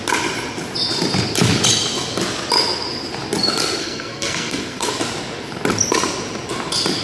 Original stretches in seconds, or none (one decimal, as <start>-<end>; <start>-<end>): 0.0-3.8; 4.9-7.0